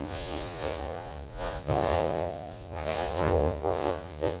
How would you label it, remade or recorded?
remade